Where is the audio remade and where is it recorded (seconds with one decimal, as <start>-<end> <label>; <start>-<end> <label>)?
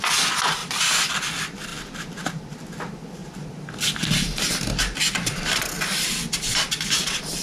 0.0-0.6 recorded; 0.6-1.1 remade; 1.1-1.7 recorded; 1.7-2.3 remade; 2.3-7.4 recorded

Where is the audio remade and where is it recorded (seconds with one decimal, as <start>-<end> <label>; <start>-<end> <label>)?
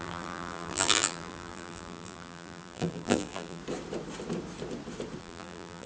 0.0-3.6 remade; 3.6-5.2 recorded; 5.2-5.9 remade